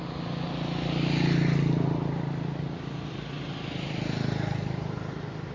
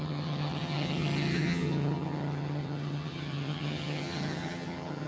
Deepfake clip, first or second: second